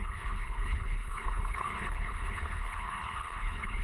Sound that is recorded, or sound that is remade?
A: remade